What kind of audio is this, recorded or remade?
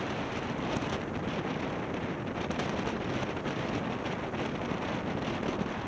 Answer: recorded